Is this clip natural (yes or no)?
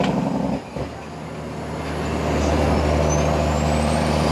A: yes